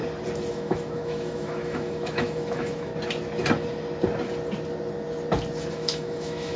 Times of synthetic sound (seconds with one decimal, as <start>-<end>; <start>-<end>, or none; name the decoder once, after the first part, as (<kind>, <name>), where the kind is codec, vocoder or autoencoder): 0.5-2.9 (autoencoder, DAC-VAE); 5.7-6.6